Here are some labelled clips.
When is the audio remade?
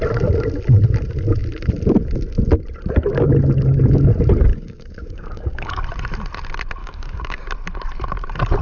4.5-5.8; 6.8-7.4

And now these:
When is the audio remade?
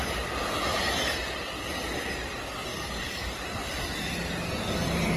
2.7-3.4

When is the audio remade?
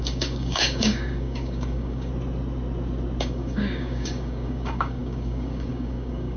0.0-2.1; 3.2-6.4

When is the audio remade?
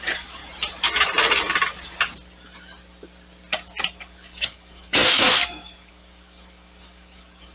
0.0-0.4; 4.0-7.5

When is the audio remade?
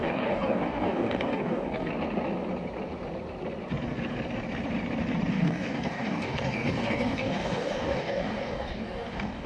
0.0-1.9; 5.3-9.5